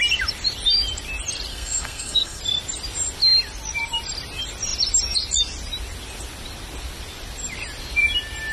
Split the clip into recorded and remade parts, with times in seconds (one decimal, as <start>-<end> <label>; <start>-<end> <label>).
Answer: 0.0-1.5 recorded; 1.5-2.4 remade; 2.4-8.5 recorded